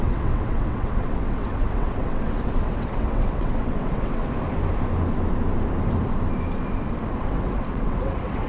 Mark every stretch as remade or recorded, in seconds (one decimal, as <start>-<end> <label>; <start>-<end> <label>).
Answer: 0.0-4.2 remade; 4.2-7.1 recorded; 7.1-8.5 remade